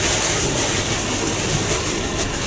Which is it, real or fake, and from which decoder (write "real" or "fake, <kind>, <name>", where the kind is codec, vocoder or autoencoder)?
real